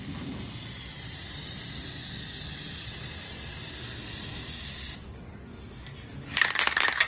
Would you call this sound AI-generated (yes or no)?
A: no